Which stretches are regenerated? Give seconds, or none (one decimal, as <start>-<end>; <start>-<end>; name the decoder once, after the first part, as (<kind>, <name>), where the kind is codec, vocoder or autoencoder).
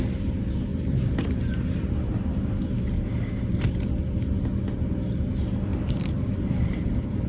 0.7-1.8 (vocoder, BigVGAN v2); 5.7-7.3